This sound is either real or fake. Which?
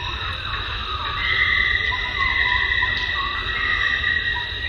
real